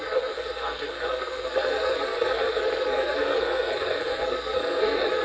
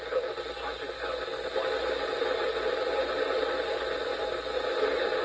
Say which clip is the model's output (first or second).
first